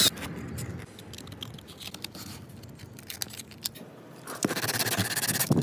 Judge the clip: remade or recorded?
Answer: recorded